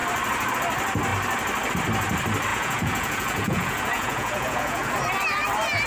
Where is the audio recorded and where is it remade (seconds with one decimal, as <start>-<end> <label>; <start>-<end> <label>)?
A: 0.0-2.5 recorded; 2.5-4.9 remade; 4.9-5.9 recorded